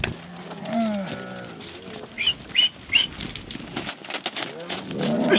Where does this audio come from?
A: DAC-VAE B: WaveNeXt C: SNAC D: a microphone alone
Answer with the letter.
D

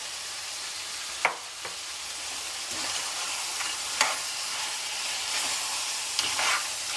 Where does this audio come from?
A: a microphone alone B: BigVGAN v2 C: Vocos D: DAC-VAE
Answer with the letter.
A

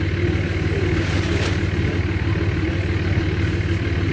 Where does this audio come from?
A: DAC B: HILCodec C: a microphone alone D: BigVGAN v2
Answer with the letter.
C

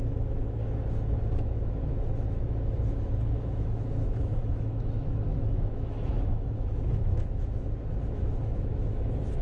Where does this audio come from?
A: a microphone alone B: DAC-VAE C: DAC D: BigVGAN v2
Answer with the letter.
B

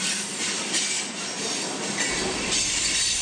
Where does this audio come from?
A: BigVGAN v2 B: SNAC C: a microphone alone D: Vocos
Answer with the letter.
C